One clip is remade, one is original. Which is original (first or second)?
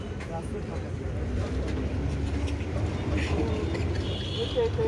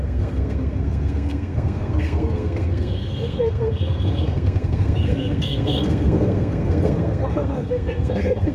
first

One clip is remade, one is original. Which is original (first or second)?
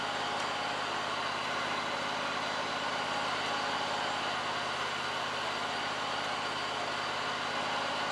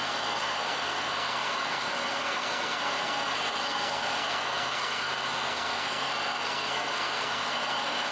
first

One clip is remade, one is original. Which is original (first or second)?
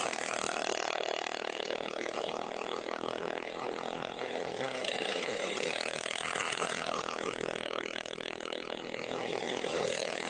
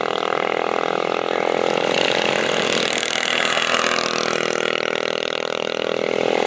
second